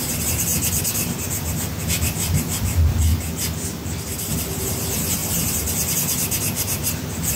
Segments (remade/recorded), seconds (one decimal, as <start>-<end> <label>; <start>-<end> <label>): 0.0-3.1 remade; 3.1-4.3 recorded; 4.3-7.4 remade